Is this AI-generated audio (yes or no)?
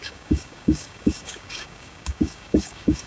yes